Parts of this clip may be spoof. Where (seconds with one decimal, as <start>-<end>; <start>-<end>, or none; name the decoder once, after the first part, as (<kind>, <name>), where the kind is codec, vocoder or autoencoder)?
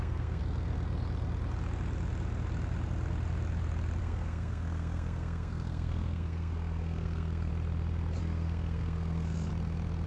0.0-0.4 (codec, SNAC); 4.0-7.5; 8.2-9.5